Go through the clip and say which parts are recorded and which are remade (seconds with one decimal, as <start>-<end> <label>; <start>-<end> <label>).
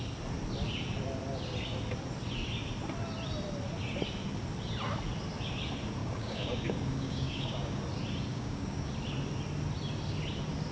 0.0-6.0 recorded; 6.0-7.8 remade; 7.8-8.3 recorded; 8.3-8.9 remade; 8.9-10.7 recorded